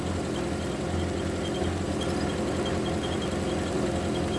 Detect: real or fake real